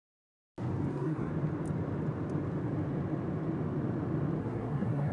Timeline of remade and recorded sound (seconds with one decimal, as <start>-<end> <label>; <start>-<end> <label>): 0.0-0.4 remade; 0.4-0.9 recorded; 0.9-1.3 remade; 1.3-4.4 recorded; 4.4-5.1 remade